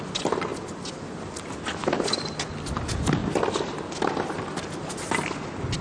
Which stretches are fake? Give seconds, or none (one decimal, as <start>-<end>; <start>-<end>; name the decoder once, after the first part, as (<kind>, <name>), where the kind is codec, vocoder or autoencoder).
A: 0.5-1.6 (vocoder, BigVGAN v2)